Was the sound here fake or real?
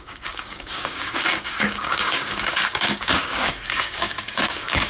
fake